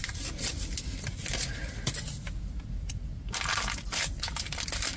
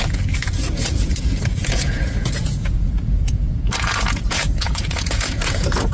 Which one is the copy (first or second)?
second